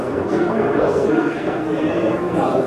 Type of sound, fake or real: fake